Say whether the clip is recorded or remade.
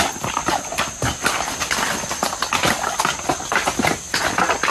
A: recorded